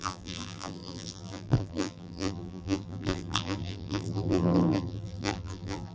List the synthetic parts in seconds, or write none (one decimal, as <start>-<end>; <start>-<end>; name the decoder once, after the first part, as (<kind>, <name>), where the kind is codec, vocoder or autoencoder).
0.0-5.9 (vocoder, BigVGAN v2)